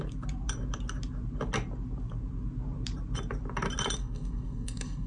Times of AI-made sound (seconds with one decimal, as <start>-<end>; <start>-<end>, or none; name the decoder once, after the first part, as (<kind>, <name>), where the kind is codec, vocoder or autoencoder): 4.0-5.1 (codec, SNAC)

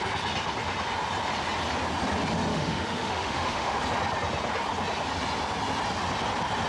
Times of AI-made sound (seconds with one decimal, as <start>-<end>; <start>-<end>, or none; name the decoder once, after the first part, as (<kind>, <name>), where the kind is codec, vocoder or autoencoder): 2.5-3.8 (autoencoder, DAC-VAE)

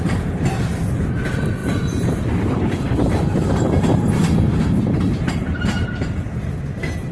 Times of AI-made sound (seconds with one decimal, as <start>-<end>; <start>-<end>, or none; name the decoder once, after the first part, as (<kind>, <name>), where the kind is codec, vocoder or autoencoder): 1.6-5.9 (vocoder, BigVGAN v2)